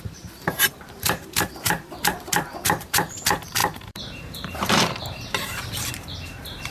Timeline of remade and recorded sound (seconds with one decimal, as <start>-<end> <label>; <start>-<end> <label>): 0.0-6.7 remade